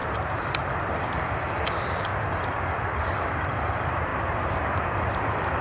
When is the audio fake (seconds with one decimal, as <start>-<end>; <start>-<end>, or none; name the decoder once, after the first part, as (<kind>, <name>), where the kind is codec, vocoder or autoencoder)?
0.0-2.1 (vocoder, BigVGAN v2); 3.4-5.6